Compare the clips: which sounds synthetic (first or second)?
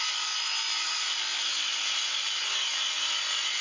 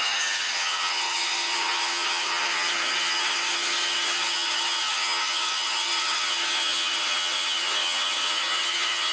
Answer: second